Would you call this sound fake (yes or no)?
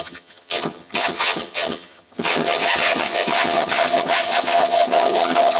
yes